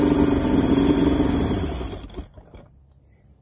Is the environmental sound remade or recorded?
recorded